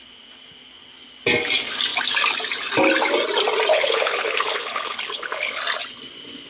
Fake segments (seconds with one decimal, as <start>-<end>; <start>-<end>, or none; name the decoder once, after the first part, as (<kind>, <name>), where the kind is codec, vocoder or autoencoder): 3.7-5.6 (codec, HILCodec)